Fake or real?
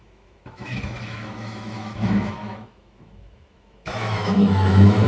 fake